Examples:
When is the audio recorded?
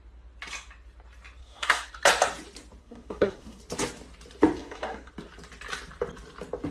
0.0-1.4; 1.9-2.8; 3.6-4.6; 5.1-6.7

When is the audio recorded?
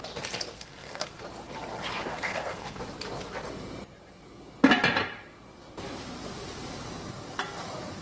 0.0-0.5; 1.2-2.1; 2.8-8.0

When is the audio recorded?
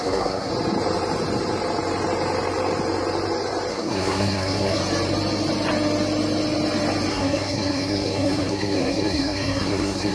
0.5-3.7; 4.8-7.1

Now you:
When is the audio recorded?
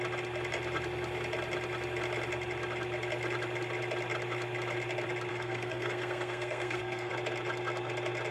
0.0-5.3; 7.1-8.3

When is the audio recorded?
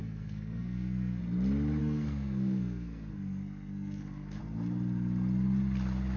1.2-1.8; 4.4-6.2